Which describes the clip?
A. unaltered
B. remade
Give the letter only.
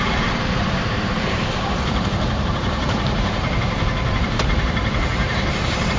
B